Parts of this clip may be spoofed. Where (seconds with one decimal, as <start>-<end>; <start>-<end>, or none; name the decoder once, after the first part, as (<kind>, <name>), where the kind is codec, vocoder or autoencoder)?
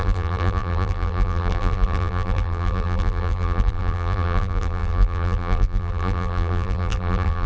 0.0-7.5 (vocoder, BigVGAN v2)